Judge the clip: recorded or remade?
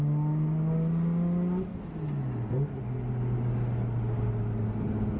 recorded